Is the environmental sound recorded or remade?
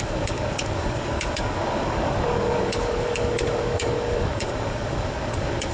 remade